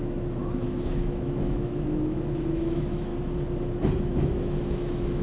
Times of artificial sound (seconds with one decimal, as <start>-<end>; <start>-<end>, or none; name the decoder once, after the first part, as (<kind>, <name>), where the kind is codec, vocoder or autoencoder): 0.0-3.1 (autoencoder, DAC-VAE); 4.1-5.2